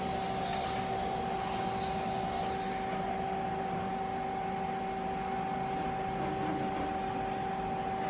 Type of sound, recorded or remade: recorded